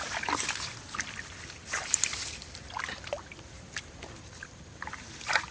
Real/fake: fake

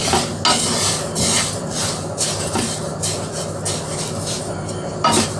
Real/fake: real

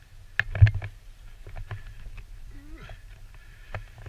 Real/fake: real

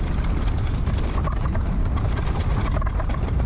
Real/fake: real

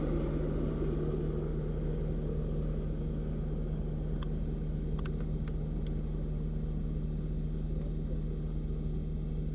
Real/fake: real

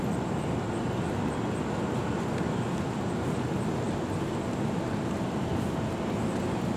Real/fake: real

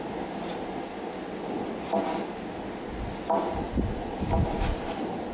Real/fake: real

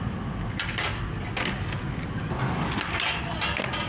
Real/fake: real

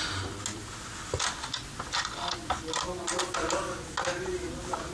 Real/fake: real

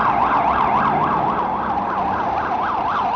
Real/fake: real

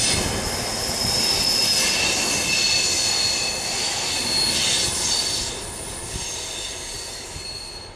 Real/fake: real